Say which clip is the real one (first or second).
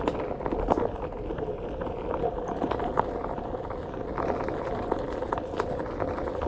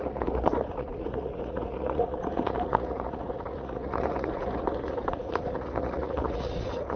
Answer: first